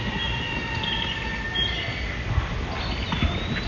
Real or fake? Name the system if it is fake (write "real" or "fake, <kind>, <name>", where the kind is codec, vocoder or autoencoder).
real